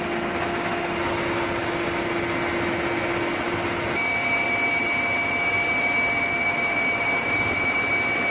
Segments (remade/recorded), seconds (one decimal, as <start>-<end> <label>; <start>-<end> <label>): 0.0-4.2 recorded; 4.2-8.3 remade